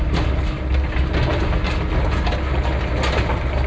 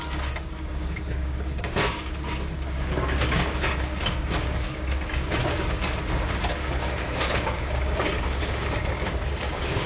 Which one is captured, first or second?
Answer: first